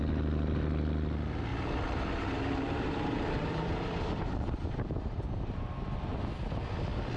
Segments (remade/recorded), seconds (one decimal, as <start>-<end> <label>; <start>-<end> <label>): 0.0-1.5 recorded; 1.5-5.5 remade; 5.5-7.2 recorded

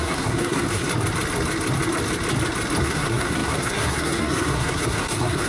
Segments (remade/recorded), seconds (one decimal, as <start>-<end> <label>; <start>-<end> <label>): 0.0-0.9 remade; 0.9-2.8 recorded; 2.8-5.5 remade

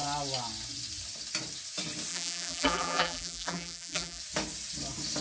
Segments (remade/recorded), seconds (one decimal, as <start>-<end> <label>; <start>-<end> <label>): 0.0-2.1 recorded; 2.1-4.2 remade; 4.2-5.2 recorded

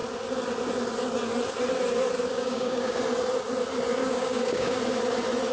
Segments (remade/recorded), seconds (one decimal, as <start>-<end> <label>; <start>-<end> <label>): 0.0-2.3 recorded; 2.3-3.0 remade; 3.0-4.0 recorded; 4.0-4.8 remade; 4.8-5.5 recorded

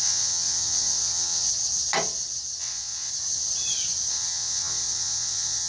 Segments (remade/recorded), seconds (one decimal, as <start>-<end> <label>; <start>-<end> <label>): 0.0-1.5 remade; 1.5-2.6 recorded; 2.6-3.1 remade; 3.1-4.1 recorded; 4.1-5.7 remade

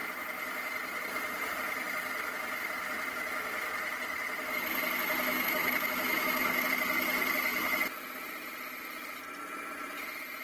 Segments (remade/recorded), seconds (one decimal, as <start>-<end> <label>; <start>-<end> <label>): 0.0-5.3 recorded; 5.3-6.7 remade; 6.7-10.4 recorded

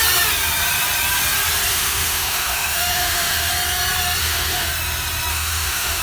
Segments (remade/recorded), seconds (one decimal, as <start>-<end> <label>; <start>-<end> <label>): 0.0-1.7 recorded; 1.7-3.5 remade; 3.5-4.2 recorded; 4.2-4.7 remade; 4.7-5.3 recorded; 5.3-6.0 remade

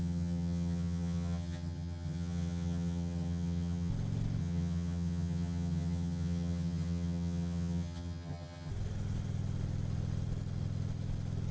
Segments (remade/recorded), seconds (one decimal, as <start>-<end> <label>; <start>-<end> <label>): 0.0-3.9 remade; 3.9-4.4 recorded; 4.4-8.7 remade; 8.7-11.5 recorded